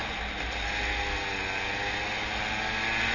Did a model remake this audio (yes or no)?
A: no